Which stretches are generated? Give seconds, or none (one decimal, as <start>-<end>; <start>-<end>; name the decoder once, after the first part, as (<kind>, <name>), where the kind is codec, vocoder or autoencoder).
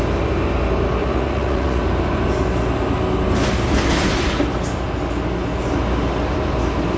1.0-1.8 (vocoder, Vocos)